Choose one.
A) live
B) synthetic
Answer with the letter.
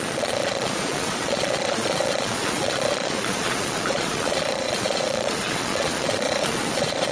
B